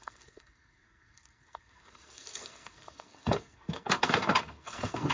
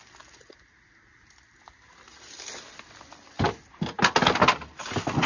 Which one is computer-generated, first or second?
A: first